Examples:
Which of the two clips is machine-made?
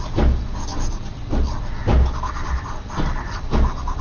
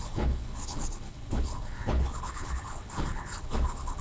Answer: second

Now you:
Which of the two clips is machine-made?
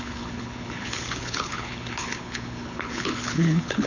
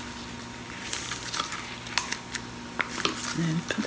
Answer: first